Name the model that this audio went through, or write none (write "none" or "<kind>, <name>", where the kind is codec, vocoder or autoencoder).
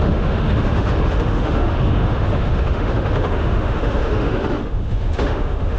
autoencoder, DAC-VAE